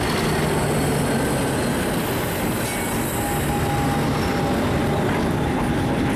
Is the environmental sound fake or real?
real